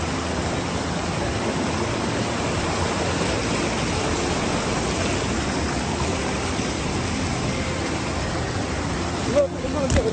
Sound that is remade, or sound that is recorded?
recorded